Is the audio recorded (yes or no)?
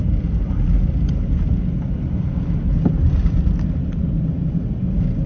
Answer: yes